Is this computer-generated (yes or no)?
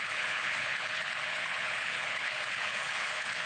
yes